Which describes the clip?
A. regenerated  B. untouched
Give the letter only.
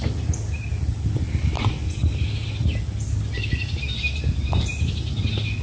B